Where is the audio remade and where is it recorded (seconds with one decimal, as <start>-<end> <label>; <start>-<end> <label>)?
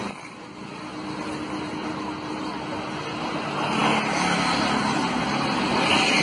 0.0-6.2 recorded